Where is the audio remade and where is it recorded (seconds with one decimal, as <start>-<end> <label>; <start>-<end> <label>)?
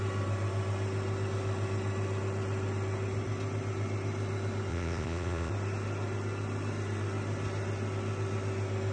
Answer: 0.0-4.7 recorded; 4.7-5.5 remade; 5.5-8.9 recorded